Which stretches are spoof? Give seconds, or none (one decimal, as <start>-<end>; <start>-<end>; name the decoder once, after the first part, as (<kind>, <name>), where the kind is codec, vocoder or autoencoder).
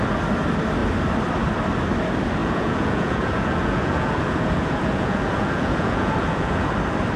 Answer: 2.4-6.7 (vocoder, Vocos)